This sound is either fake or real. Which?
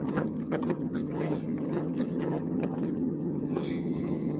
fake